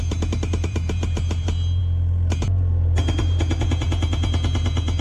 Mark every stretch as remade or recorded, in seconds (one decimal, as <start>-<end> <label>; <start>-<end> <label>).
0.0-1.8 remade; 1.8-5.0 recorded

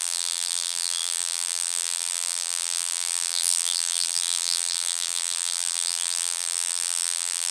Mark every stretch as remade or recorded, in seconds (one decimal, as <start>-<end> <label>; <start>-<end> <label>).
0.0-7.5 remade

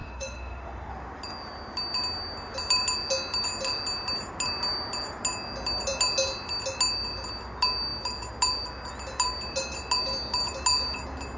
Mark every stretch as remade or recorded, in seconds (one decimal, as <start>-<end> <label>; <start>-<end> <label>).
0.0-0.9 remade; 0.9-11.4 recorded

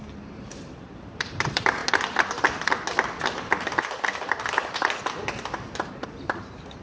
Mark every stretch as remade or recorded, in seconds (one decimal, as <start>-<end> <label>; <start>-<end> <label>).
0.0-1.8 remade; 1.8-5.9 recorded; 5.9-6.8 remade